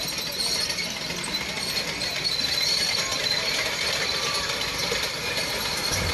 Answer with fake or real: real